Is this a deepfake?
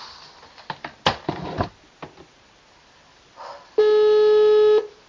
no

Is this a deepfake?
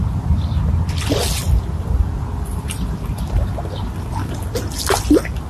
no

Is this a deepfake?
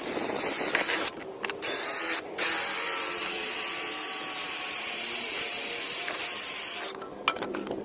no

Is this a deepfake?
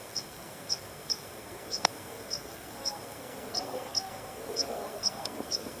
yes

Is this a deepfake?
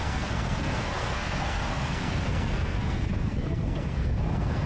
yes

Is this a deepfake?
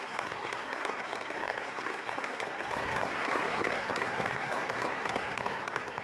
yes